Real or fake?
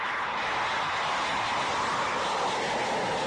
real